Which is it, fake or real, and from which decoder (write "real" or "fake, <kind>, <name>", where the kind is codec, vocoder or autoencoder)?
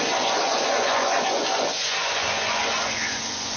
fake, vocoder, Vocos